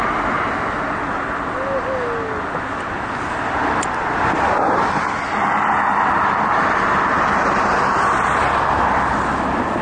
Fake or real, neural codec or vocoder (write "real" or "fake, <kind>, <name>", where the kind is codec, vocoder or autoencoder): real